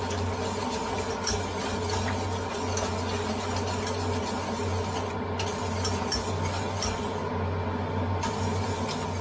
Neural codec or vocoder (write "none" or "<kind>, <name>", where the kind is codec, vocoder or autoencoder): none